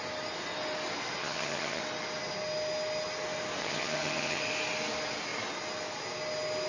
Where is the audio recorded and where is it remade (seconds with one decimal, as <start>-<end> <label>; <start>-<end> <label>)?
0.0-1.2 recorded; 1.2-1.8 remade; 1.8-3.6 recorded; 3.6-4.4 remade; 4.4-6.7 recorded

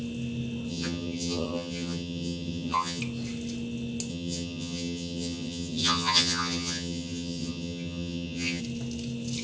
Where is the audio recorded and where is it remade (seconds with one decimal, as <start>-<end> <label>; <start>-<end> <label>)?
0.0-0.7 recorded; 0.7-3.0 remade; 3.0-4.1 recorded; 4.1-8.6 remade; 8.6-9.4 recorded

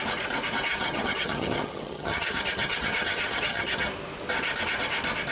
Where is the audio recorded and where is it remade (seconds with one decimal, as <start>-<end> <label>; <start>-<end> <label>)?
0.0-0.7 recorded; 0.7-3.9 remade; 3.9-5.3 recorded

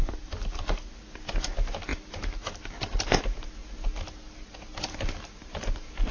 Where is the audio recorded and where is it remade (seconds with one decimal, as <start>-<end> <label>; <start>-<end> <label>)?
0.0-6.1 recorded

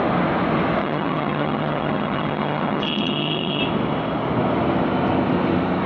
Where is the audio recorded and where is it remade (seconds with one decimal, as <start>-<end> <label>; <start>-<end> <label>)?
0.0-0.8 recorded; 0.8-3.6 remade; 3.6-5.9 recorded

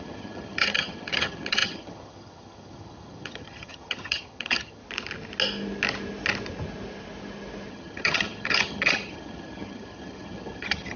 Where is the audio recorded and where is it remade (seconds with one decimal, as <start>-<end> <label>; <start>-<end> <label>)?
0.0-4.8 remade; 4.8-7.7 recorded; 7.7-11.0 remade

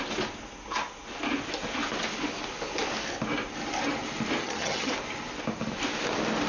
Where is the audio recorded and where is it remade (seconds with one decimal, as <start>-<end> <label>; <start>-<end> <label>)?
0.0-4.4 recorded; 4.4-4.9 remade; 4.9-6.5 recorded

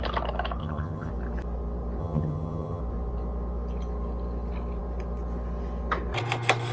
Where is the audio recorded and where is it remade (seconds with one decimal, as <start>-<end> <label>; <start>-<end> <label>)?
0.0-0.6 recorded; 0.6-1.1 remade; 1.1-2.0 recorded; 2.0-2.8 remade; 2.8-6.7 recorded